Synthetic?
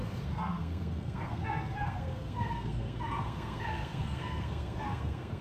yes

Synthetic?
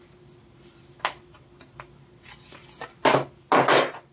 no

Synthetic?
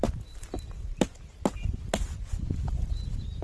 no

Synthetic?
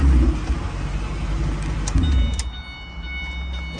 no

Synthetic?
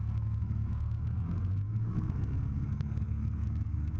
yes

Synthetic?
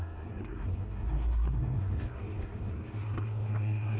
yes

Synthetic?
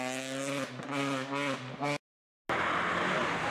no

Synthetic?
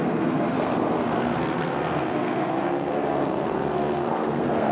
yes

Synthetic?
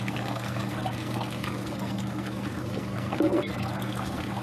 yes